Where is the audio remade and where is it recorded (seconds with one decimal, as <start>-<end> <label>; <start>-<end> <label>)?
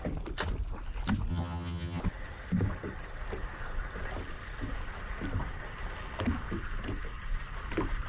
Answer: 0.0-1.3 recorded; 1.3-2.0 remade; 2.0-8.1 recorded